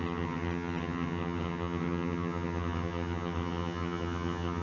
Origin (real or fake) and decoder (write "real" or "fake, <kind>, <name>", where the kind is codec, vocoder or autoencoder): fake, vocoder, HiFi-GAN